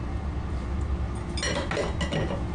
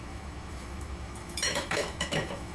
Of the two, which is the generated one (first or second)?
second